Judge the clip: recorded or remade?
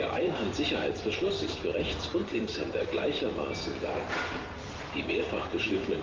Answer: remade